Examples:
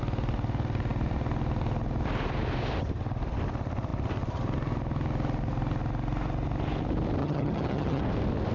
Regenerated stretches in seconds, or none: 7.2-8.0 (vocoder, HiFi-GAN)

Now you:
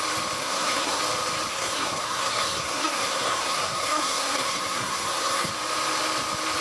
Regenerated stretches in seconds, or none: 0.4-1.0 (codec, SNAC); 1.5-5.5

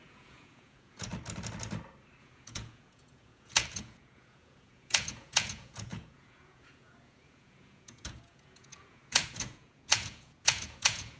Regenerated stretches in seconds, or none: 0.0-1.1 (vocoder, Vocos); 2.2-11.2